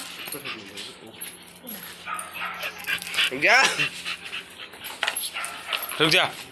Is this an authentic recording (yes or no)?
yes